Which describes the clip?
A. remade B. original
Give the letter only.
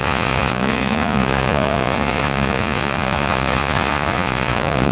A